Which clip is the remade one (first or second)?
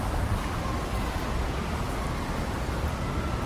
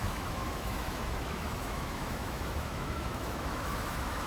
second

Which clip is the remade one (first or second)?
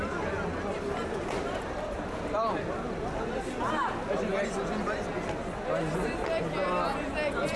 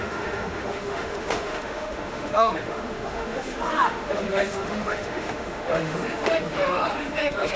second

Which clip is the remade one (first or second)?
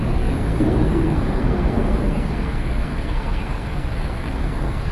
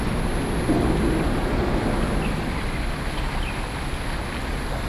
first